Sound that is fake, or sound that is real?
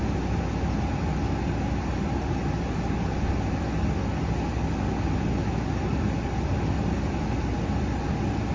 real